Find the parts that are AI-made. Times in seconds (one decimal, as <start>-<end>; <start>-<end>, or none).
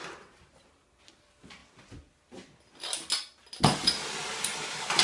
none